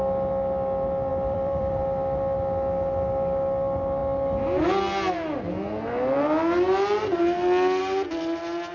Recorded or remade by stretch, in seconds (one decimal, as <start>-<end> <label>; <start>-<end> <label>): 0.0-1.1 recorded; 1.1-1.8 remade; 1.8-8.7 recorded